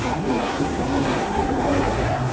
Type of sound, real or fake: fake